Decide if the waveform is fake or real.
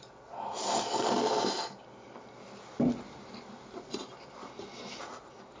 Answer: real